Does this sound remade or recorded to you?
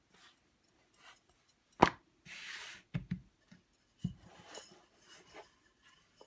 recorded